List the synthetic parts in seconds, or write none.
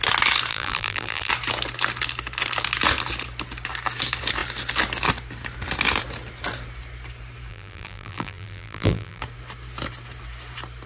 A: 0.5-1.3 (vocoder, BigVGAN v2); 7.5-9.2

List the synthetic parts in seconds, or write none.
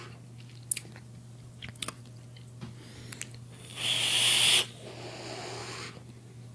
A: none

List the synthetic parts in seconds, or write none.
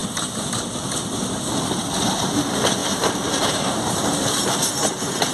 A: 2.8-4.7 (vocoder, BigVGAN v2)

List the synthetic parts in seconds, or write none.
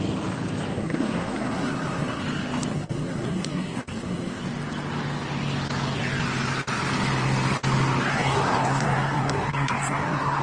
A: 0.7-2.2 (codec, SNAC); 2.7-4.4; 8.1-10.4